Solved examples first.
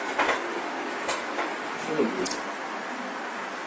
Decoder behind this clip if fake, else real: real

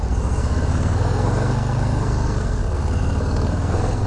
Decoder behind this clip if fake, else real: fake, codec, SNAC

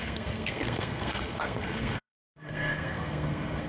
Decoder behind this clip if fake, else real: fake, codec, SNAC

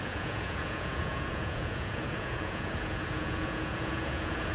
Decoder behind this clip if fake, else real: fake, vocoder, Vocos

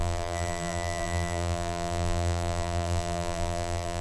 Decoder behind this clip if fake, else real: fake, vocoder, BigVGAN v2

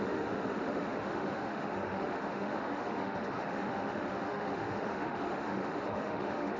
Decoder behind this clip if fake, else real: fake, autoencoder, DAC-VAE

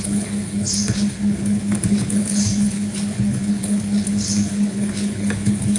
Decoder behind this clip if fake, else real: fake, codec, HILCodec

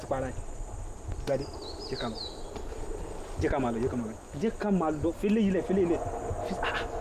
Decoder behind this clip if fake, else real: real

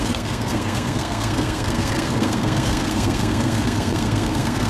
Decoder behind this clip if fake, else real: fake, codec, SNAC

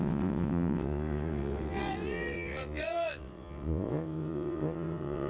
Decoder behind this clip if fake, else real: fake, vocoder, WaveNeXt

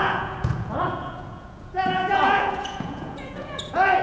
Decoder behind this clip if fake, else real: fake, vocoder, Vocos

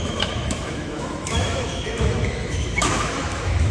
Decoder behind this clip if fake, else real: fake, autoencoder, DAC-VAE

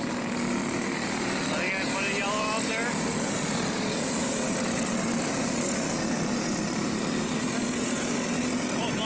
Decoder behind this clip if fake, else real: real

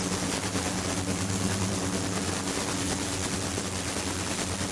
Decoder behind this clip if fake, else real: real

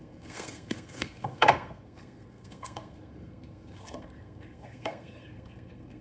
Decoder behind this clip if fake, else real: fake, codec, SNAC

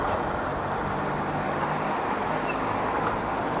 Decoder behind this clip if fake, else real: real